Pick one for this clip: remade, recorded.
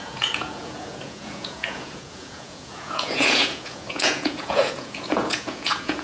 remade